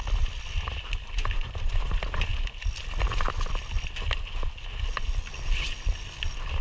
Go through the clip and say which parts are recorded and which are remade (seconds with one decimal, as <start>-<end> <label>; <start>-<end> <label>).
0.0-6.6 recorded